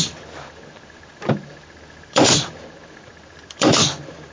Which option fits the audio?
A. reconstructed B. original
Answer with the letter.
A